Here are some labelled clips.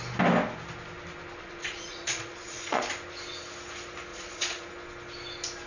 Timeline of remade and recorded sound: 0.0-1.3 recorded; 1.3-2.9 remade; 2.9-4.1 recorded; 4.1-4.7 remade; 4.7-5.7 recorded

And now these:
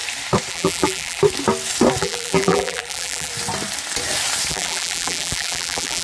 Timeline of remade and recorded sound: 0.0-0.5 recorded; 0.5-1.2 remade; 1.2-2.0 recorded; 2.0-3.3 remade; 3.3-4.5 recorded; 4.5-6.0 remade

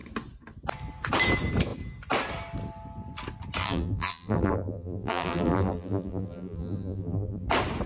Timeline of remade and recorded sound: 0.0-3.6 recorded; 3.6-7.5 remade; 7.5-7.9 recorded